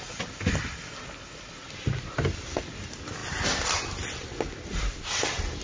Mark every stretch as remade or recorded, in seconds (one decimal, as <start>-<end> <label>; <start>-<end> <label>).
0.0-5.6 recorded